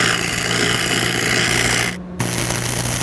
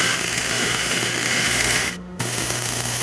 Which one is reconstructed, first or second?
second